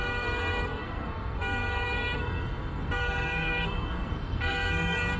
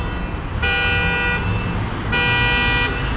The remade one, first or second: first